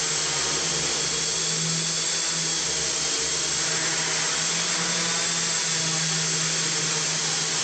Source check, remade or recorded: recorded